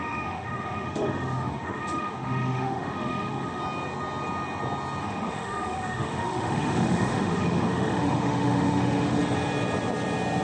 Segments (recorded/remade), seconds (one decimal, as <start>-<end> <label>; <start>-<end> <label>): 0.0-3.6 remade; 3.6-5.0 recorded; 5.0-9.2 remade; 9.2-10.4 recorded